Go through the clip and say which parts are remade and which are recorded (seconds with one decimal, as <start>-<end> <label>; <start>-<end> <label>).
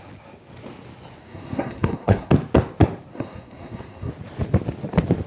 0.0-1.2 recorded; 1.2-2.3 remade; 2.3-3.1 recorded; 3.1-4.1 remade; 4.1-5.3 recorded